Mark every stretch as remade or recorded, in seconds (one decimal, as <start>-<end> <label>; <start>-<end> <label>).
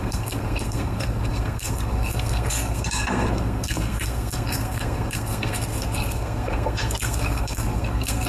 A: 0.0-8.3 remade